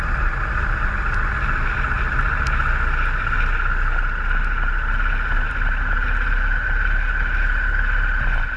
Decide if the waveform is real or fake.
real